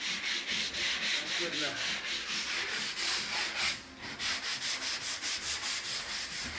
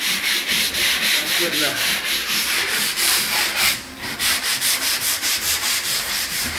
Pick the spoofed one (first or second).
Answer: second